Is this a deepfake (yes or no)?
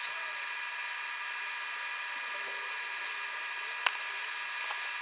no